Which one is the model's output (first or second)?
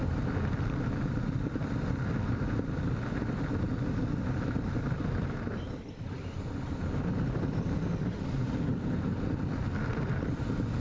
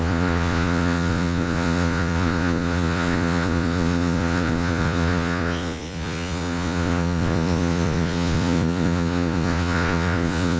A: second